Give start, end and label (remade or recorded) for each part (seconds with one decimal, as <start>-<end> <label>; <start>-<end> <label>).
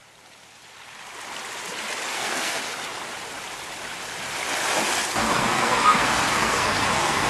0.0-2.1 recorded; 2.1-2.6 remade; 2.6-5.2 recorded; 5.2-7.3 remade